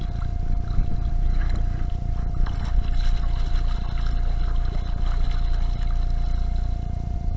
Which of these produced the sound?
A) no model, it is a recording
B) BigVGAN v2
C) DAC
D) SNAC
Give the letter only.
A